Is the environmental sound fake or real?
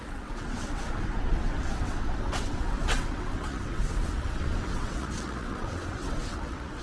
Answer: fake